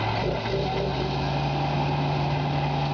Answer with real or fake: real